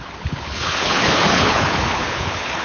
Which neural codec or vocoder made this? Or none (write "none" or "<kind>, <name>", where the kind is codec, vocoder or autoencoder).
codec, HILCodec